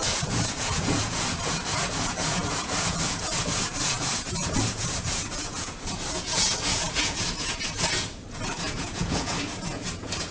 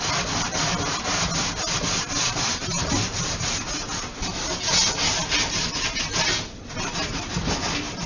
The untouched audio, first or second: second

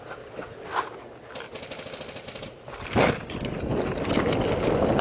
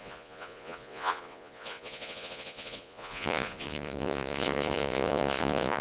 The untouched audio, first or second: first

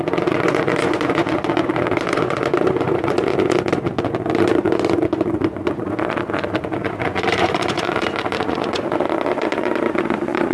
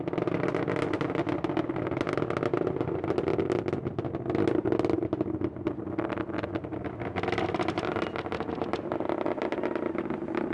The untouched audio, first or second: second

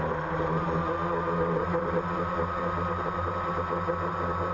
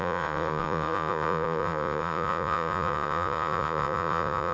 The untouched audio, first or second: first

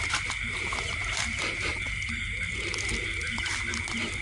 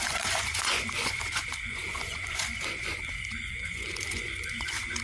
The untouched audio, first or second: first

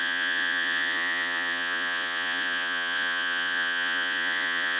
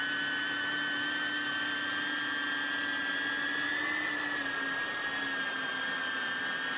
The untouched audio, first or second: second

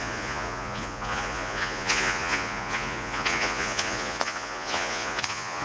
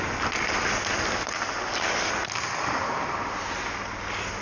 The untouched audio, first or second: second